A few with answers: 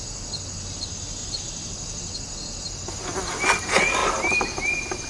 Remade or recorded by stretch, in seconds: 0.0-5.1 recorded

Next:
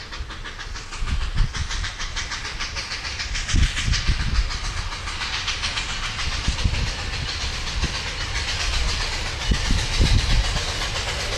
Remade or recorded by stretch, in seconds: 0.0-1.6 recorded; 1.6-3.2 remade; 3.2-11.4 recorded

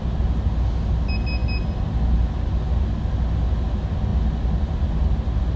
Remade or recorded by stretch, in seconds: 0.0-5.6 recorded

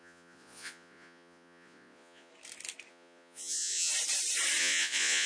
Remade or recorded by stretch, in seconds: 0.0-2.3 remade; 2.3-2.9 recorded; 2.9-3.9 remade; 3.9-4.6 recorded; 4.6-5.3 remade

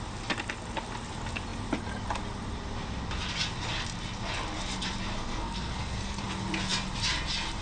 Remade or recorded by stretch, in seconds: 0.0-5.1 recorded; 5.1-6.2 remade; 6.2-7.6 recorded